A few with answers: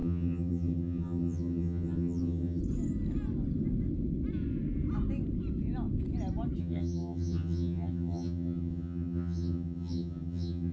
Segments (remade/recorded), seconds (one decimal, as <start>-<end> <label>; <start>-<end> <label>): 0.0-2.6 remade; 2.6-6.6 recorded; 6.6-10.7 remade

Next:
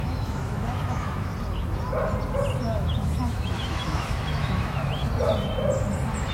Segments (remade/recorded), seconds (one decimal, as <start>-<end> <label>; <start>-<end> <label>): 0.0-1.3 remade; 1.3-2.6 recorded; 2.6-5.0 remade; 5.0-6.3 recorded

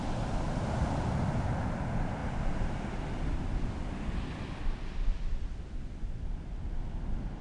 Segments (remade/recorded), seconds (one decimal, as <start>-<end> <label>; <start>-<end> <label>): 0.0-7.4 recorded

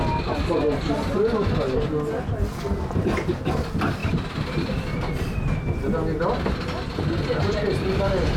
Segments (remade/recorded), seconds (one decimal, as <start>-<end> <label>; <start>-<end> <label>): 0.0-8.4 recorded

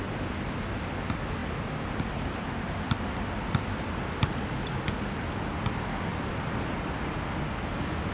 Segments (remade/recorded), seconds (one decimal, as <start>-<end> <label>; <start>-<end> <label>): 0.0-8.1 recorded